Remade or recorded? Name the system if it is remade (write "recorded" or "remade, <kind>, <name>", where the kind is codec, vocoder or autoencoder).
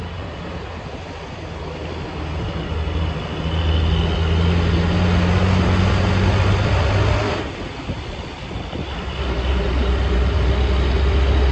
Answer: recorded